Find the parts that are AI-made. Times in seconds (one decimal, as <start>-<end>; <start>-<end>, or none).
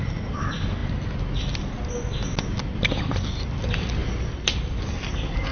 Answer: none